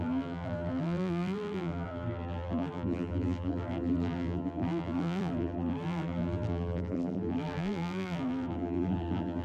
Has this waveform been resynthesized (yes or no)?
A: yes